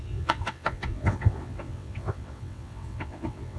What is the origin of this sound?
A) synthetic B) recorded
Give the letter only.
A